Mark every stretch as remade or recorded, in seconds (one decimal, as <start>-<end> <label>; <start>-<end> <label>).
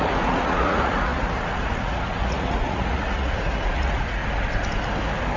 0.0-4.2 remade; 4.2-5.4 recorded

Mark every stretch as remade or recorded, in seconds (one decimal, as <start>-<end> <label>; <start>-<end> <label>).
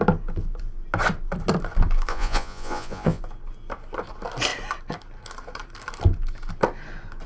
0.0-2.1 recorded; 2.1-3.2 remade; 3.2-7.3 recorded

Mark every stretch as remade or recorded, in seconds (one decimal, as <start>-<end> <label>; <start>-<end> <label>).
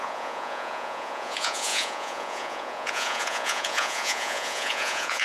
0.0-5.2 remade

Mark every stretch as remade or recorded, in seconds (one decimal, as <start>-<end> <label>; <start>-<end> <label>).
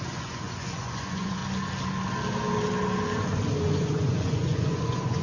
0.0-1.4 remade; 1.4-3.6 recorded; 3.6-5.2 remade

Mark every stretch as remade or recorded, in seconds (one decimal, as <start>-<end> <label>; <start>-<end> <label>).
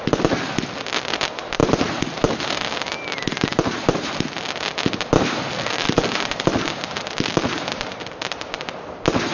0.0-9.3 recorded